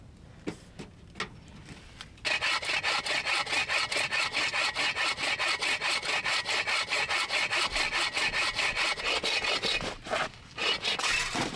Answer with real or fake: real